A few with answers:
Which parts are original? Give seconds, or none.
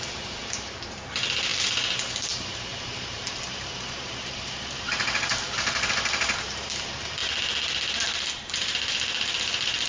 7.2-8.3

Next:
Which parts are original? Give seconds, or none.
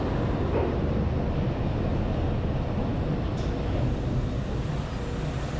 0.0-5.6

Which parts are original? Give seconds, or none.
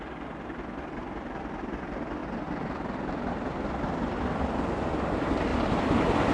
0.0-2.2; 4.9-5.5